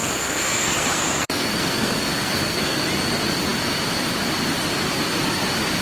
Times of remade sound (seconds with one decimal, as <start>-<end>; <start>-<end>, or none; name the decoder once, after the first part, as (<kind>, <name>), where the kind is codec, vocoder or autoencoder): 0.0-2.8 (codec, SNAC)